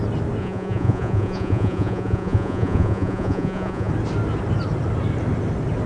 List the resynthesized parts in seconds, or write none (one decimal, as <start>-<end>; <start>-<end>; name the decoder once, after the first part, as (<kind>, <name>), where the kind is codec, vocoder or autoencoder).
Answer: 0.4-3.9 (vocoder, Vocos)